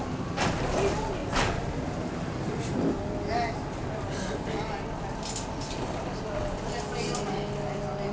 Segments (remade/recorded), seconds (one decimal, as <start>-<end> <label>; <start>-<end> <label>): 0.0-1.2 recorded; 1.2-3.0 remade; 3.0-8.1 recorded